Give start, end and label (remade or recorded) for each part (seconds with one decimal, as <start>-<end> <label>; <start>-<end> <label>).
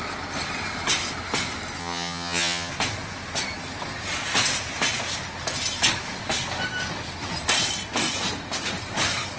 0.0-1.8 recorded; 1.8-2.7 remade; 2.7-9.4 recorded